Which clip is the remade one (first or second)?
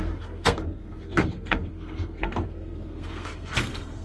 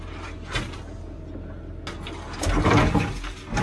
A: first